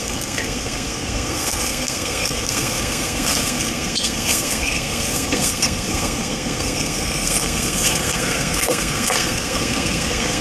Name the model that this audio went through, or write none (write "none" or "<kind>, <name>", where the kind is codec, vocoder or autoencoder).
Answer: codec, SNAC